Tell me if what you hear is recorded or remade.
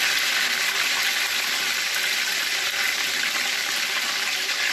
recorded